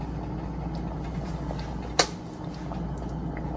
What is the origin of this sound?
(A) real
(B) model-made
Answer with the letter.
A